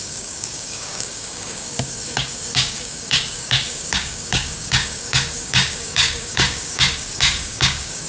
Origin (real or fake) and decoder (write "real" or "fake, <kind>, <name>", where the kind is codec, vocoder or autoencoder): fake, codec, DAC